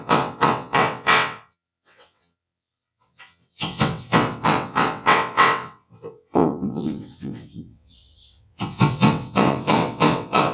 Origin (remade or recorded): remade